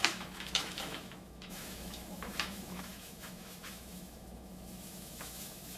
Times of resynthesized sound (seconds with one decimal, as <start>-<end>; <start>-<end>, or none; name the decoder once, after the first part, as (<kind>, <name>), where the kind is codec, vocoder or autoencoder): 0.0-5.8 (autoencoder, DAC-VAE)